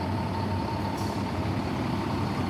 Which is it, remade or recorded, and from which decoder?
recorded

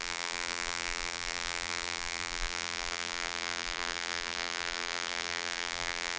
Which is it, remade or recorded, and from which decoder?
remade, vocoder, BigVGAN v2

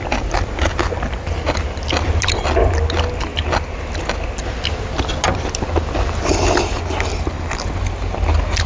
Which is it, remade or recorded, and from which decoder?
recorded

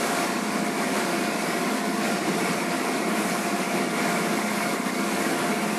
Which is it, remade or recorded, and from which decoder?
remade, codec, DAC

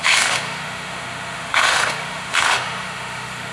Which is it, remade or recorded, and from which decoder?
remade, autoencoder, DAC-VAE